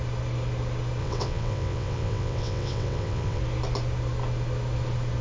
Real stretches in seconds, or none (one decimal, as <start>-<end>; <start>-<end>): 0.0-1.0; 3.4-5.2